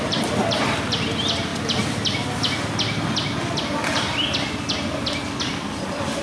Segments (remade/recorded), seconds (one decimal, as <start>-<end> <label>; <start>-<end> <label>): 0.0-6.2 recorded